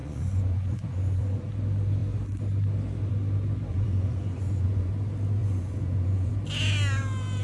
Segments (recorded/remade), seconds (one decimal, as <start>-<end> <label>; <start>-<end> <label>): 0.0-1.5 remade; 1.5-3.7 recorded; 3.7-4.9 remade; 4.9-5.4 recorded; 5.4-6.3 remade; 6.3-7.4 recorded